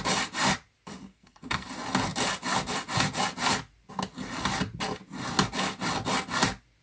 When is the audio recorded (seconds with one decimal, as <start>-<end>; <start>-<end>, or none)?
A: 0.0-1.1; 1.7-6.8